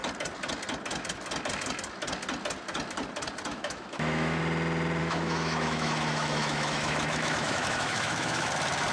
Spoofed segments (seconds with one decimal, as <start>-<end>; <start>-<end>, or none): 3.5-4.4; 5.0-8.5

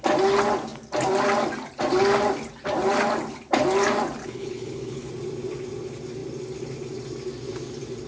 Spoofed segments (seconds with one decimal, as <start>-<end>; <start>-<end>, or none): 4.2-5.1

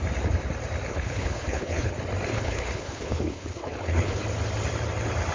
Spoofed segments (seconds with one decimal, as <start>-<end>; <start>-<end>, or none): 0.9-1.9; 2.3-4.2

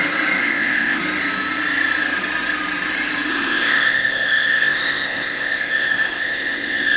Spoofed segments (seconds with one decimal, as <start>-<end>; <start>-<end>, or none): 0.4-1.0; 3.3-7.0

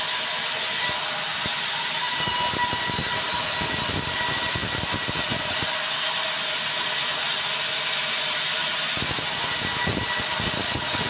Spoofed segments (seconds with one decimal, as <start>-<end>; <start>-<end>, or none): none

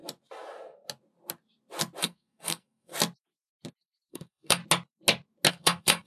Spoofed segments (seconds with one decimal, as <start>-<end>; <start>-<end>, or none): 2.0-2.9; 4.1-4.6; 5.5-6.1

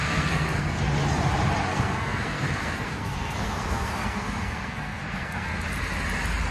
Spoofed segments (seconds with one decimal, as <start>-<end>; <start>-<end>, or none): 0.0-0.8; 1.7-5.6